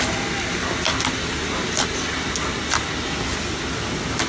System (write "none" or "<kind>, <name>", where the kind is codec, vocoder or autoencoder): none